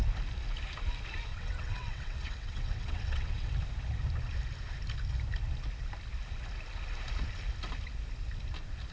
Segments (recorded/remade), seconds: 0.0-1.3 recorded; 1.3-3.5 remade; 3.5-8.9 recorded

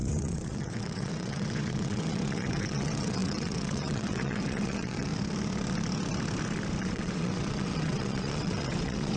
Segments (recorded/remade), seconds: 0.0-5.1 remade; 5.1-6.8 recorded; 6.8-9.2 remade